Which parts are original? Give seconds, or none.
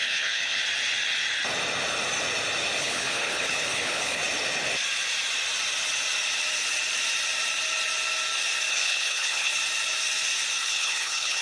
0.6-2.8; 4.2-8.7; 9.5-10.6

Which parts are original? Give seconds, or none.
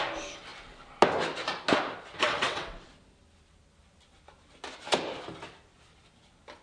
0.0-2.2; 2.9-6.6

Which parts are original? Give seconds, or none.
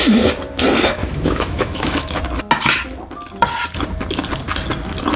0.0-1.0; 2.2-5.2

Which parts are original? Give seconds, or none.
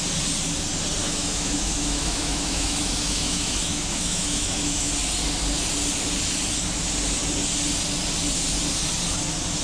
0.0-1.0; 4.9-9.6